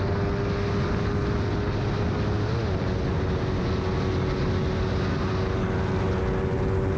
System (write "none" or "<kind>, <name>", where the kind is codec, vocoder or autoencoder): none